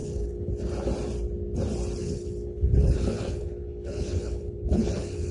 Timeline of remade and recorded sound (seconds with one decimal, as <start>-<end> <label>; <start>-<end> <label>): 0.0-0.5 remade; 0.5-2.0 recorded; 2.0-5.3 remade